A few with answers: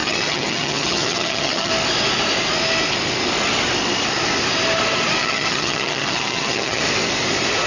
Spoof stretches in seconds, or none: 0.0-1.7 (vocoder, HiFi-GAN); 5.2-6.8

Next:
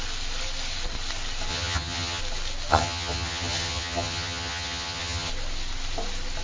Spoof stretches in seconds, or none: 1.5-2.2 (vocoder, HiFi-GAN); 2.7-5.3